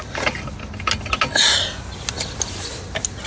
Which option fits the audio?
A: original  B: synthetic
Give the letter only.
A